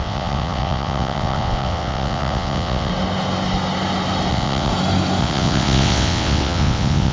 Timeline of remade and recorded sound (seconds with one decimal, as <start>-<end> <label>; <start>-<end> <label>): 0.0-2.9 remade; 2.9-4.3 recorded; 4.3-4.7 remade; 4.7-5.2 recorded; 5.2-7.1 remade